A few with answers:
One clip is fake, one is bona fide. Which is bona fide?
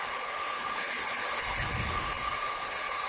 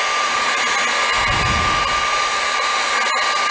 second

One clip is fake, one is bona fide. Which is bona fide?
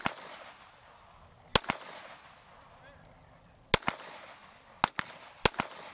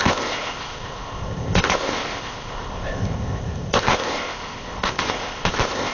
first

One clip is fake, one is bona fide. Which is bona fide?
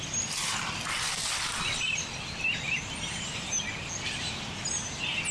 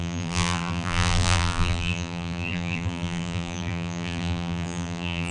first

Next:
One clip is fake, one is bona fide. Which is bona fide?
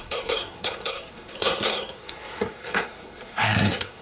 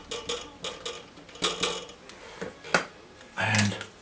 second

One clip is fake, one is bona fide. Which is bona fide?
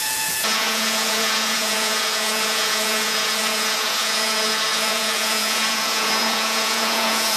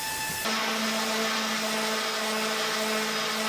second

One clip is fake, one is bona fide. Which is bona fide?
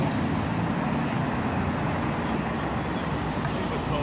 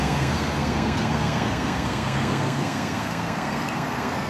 first